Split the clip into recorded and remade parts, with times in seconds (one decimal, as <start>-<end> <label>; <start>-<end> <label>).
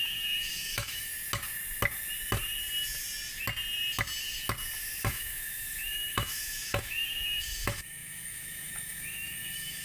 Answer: 0.0-1.1 remade; 1.1-5.0 recorded; 5.0-9.8 remade